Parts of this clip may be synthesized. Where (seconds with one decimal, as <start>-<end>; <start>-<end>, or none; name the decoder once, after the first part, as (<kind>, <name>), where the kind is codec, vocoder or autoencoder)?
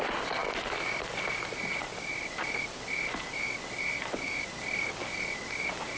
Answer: none